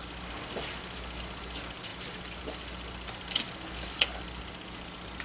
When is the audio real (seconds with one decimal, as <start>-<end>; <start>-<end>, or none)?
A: 0.0-5.2